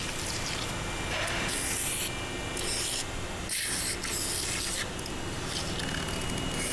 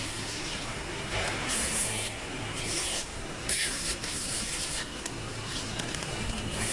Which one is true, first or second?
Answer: first